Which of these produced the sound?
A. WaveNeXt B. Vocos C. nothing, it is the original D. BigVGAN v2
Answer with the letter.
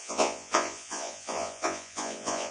B